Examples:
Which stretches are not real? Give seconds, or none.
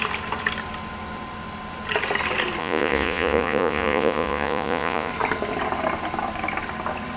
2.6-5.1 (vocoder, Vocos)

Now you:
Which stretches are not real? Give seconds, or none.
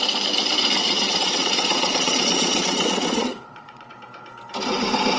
0.8-3.9 (vocoder, Vocos)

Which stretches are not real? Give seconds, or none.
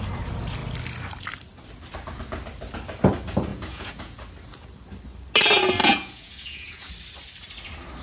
3.5-4.2 (vocoder, Vocos); 5.8-6.9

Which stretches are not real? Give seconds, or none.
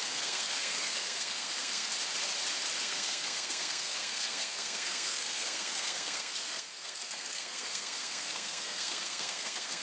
0.0-1.9 (codec, SNAC); 2.8-9.8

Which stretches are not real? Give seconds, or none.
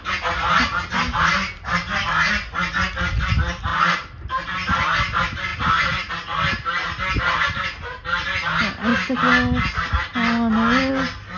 none